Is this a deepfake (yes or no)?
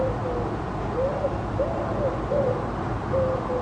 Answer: no